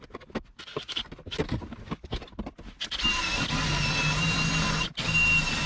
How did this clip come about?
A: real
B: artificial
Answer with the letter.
A